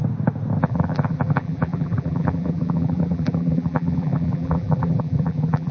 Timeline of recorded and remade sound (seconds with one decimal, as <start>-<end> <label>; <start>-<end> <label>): 0.0-0.6 recorded; 0.6-5.7 remade